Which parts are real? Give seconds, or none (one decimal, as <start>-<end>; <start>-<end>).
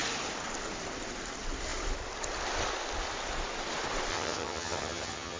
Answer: 0.0-4.1